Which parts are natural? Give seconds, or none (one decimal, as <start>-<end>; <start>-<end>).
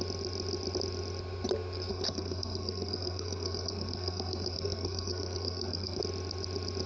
0.0-1.9; 6.0-6.9